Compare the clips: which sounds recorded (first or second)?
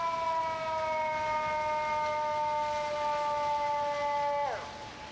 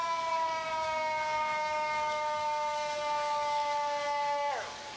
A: first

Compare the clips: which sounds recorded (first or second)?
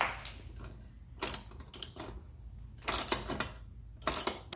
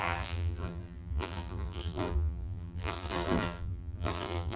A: first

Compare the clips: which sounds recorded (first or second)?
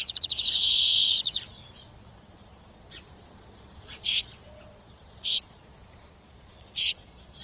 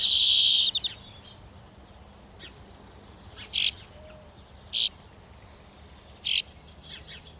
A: second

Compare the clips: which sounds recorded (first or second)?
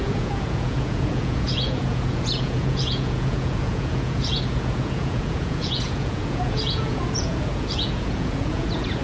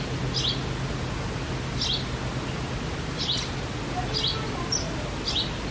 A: second